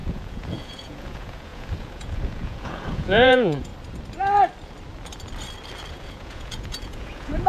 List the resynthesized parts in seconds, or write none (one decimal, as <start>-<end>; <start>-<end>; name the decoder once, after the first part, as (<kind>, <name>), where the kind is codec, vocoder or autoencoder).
0.0-3.7 (vocoder, Vocos); 5.9-7.5